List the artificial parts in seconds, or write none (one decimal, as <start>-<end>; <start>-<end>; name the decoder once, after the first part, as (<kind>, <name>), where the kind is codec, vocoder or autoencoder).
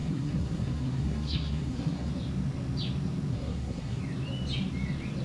0.0-2.1 (codec, SNAC); 3.3-4.0